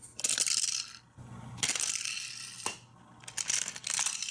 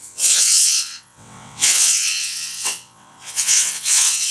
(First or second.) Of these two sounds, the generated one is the second